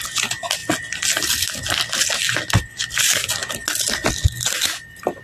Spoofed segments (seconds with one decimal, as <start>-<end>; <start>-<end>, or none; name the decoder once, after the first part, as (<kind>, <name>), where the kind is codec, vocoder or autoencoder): none